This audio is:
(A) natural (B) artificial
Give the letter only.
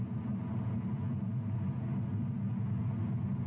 A